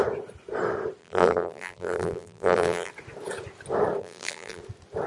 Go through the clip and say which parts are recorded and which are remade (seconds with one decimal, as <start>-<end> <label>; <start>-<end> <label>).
0.0-1.0 recorded; 1.0-2.9 remade; 2.9-4.0 recorded; 4.0-4.6 remade; 4.6-5.1 recorded